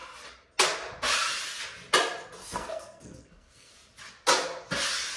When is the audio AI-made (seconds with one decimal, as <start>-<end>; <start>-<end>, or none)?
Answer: 2.4-3.7